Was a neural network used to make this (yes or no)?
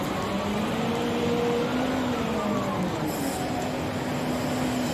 no